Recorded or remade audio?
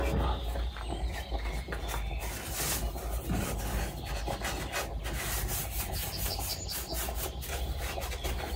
recorded